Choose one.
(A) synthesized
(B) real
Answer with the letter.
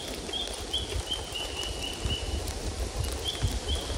B